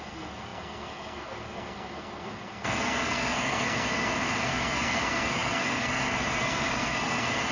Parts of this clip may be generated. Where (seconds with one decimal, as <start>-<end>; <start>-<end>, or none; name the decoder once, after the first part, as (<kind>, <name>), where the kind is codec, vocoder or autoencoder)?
0.0-7.5 (codec, SNAC)